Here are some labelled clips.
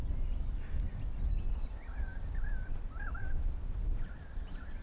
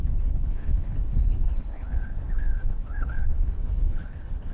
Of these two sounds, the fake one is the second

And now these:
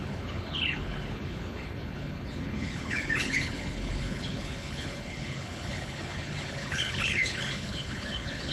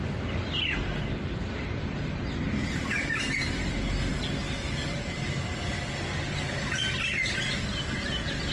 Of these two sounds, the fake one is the first